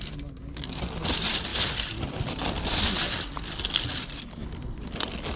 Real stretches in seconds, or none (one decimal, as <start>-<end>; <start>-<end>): 0.0-1.5; 2.8-5.4